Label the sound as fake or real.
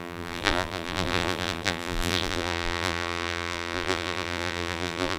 fake